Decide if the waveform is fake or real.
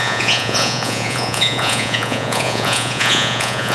fake